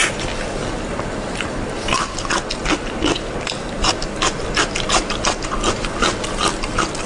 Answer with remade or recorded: recorded